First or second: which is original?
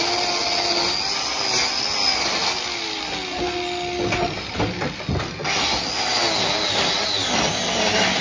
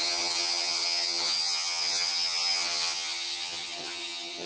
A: first